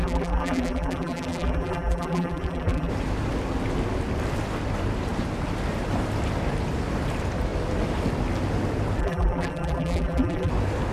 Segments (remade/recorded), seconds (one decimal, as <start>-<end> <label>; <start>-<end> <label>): 0.0-2.9 remade; 2.9-9.0 recorded; 9.0-10.5 remade; 10.5-10.9 recorded